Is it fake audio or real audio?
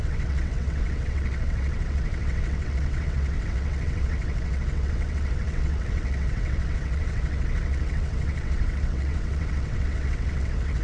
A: fake